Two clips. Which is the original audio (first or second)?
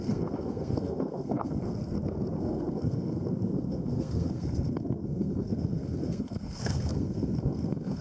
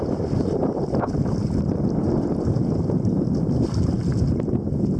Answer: second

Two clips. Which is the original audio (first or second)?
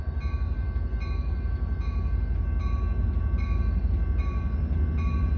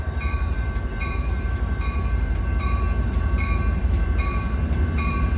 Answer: first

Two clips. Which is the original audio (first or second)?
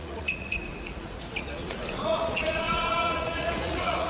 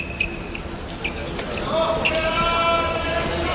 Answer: second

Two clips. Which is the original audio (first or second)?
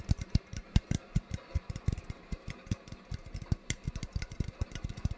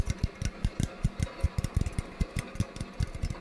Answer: second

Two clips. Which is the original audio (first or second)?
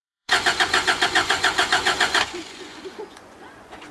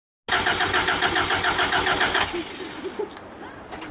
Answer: second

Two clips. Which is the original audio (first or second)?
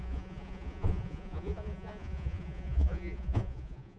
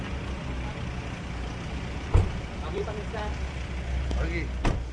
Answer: second